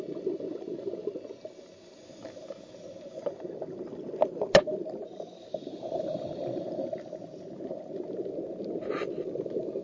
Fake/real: real